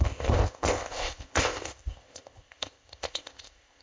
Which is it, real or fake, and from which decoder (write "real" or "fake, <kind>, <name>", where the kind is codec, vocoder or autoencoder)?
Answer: fake, codec, ZipCodec